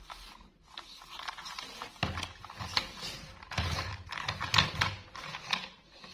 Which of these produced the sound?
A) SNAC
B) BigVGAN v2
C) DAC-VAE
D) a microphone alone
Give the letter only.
D